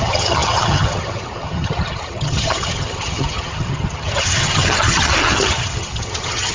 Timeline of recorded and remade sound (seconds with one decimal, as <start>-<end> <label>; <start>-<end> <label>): 0.0-6.5 remade